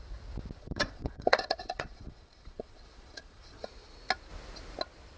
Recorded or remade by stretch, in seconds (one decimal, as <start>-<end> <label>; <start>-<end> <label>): 0.0-0.6 recorded; 0.6-3.7 remade; 3.7-5.2 recorded